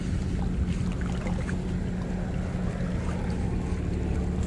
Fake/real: real